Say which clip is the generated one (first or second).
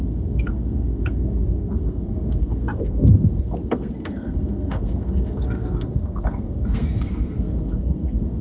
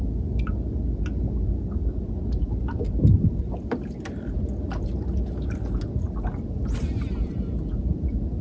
first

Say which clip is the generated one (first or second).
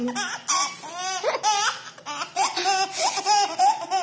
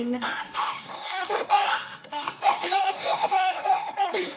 second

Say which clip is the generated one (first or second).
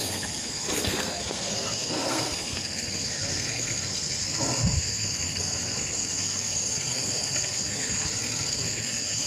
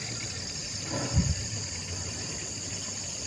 first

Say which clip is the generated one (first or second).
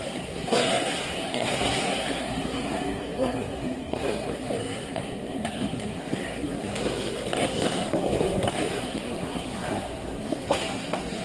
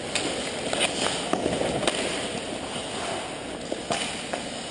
first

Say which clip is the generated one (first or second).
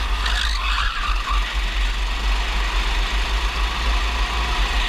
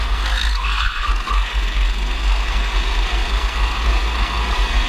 second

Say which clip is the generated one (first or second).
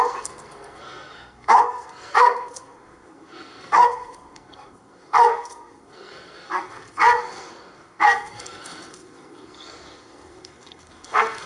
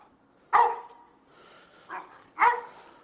first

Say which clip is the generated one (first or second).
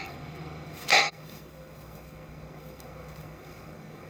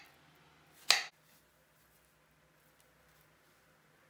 first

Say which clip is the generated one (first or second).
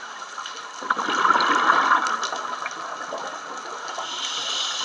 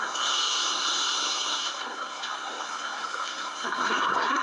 second